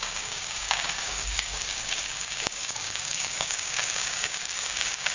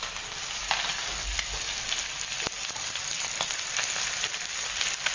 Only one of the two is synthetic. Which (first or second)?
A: first